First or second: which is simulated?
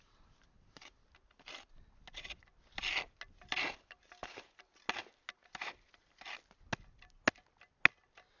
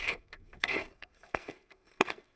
second